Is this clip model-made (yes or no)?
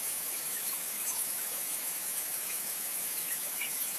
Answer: yes